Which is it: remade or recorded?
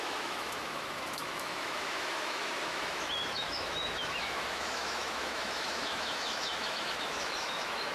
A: remade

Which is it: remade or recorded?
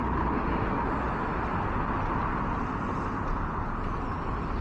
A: recorded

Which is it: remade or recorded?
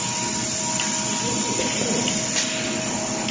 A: recorded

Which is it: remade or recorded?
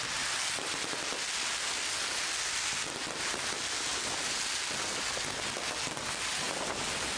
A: recorded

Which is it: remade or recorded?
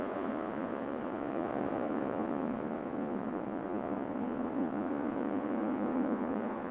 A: remade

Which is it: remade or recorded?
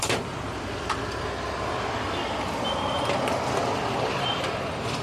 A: remade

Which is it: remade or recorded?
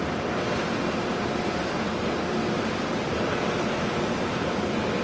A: recorded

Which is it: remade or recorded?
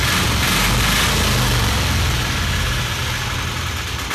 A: recorded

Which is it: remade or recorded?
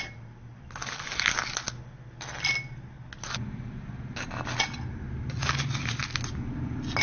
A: recorded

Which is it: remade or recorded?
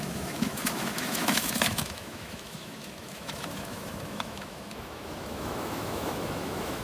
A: remade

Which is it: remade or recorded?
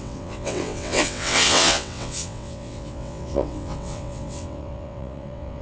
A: remade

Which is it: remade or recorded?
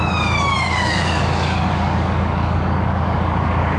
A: remade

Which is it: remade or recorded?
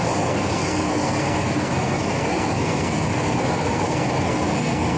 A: remade